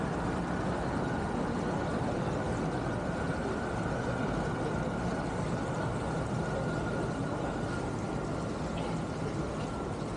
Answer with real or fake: real